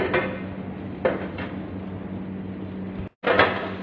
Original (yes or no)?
yes